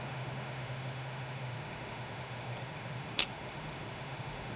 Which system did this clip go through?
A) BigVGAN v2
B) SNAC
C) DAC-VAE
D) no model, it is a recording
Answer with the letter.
C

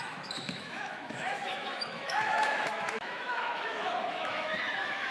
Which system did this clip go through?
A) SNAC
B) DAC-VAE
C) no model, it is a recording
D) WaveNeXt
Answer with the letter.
B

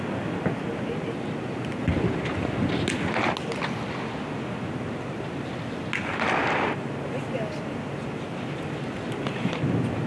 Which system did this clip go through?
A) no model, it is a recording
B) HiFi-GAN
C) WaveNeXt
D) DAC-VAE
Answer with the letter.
A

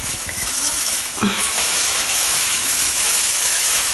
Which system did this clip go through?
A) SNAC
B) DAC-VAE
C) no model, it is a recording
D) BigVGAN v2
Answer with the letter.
B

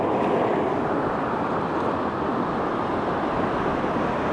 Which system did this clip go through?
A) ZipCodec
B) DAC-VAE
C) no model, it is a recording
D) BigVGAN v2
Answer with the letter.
C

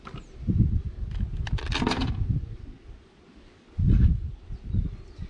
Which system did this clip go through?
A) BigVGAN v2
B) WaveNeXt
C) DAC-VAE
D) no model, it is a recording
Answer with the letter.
D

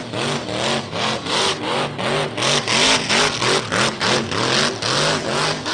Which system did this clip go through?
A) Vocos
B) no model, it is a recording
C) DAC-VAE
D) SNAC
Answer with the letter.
B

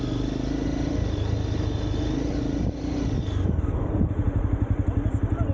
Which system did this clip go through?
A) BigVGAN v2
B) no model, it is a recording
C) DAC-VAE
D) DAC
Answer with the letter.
B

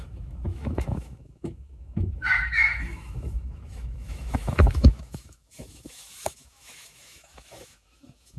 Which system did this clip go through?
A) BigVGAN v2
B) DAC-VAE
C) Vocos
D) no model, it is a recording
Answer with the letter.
B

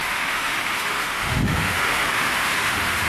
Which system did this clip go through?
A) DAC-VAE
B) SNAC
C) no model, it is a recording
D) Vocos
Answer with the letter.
A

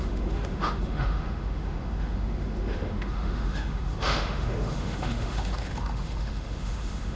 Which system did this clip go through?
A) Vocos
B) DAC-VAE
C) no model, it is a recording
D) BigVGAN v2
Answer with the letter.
B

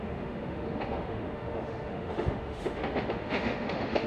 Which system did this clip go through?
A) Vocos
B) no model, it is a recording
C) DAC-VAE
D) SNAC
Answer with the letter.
C